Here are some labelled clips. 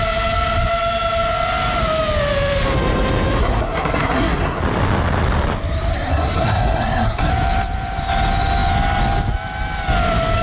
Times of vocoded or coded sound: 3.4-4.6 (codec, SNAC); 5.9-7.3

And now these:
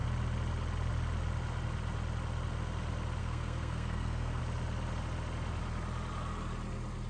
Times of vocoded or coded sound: 3.2-4.4 (codec, SNAC)

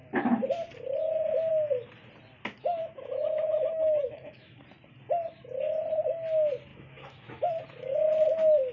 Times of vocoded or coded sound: 2.7-4.6 (autoencoder, DAC-VAE); 6.7-7.5

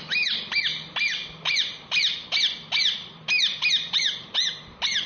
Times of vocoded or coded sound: 0.7-2.1 (vocoder, BigVGAN v2); 2.8-4.6